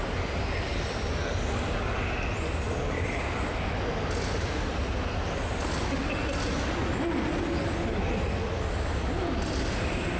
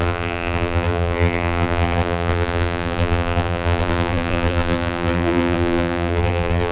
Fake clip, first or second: second